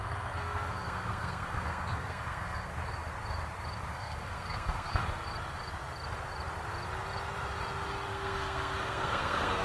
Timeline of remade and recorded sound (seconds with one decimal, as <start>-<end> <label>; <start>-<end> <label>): 0.0-2.7 remade; 2.7-3.9 recorded; 3.9-5.0 remade; 5.0-8.1 recorded; 8.1-9.6 remade